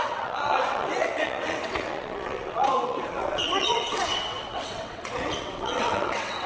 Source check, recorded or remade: remade